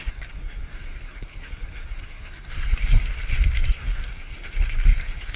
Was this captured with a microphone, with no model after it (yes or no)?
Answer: no